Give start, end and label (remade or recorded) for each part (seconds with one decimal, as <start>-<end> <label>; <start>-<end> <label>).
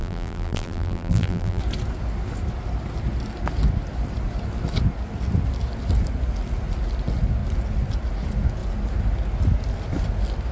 0.0-1.6 remade; 1.6-10.5 recorded